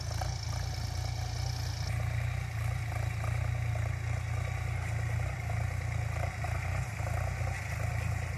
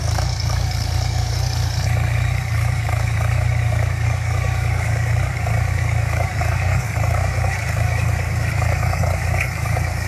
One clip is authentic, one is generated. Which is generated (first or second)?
second